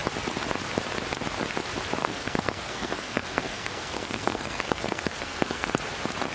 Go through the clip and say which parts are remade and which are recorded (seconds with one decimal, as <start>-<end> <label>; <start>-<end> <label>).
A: 0.0-2.0 recorded; 2.0-5.8 remade; 5.8-6.3 recorded